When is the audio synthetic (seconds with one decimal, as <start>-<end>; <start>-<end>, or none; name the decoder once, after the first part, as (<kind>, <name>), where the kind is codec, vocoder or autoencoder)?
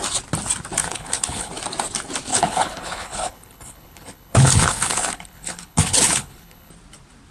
0.8-1.5 (codec, HILCodec); 2.3-6.7